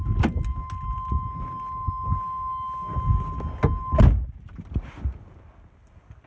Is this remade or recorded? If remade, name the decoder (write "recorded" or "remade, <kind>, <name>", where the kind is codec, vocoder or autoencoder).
recorded